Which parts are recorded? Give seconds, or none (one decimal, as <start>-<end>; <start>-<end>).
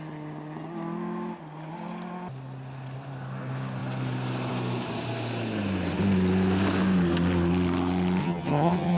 0.0-8.2